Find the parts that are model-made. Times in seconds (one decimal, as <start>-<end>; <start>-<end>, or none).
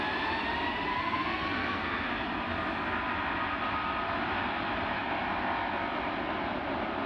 0.9-2.1